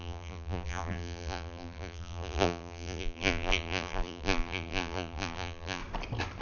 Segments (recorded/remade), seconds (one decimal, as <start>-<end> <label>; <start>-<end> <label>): 0.0-5.8 remade; 5.8-6.4 recorded